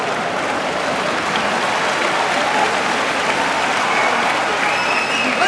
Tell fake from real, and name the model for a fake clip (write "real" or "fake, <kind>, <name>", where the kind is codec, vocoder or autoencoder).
real